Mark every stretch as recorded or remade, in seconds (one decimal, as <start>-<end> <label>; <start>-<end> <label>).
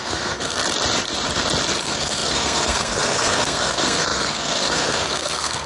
0.0-0.6 remade; 0.6-1.8 recorded; 1.8-5.7 remade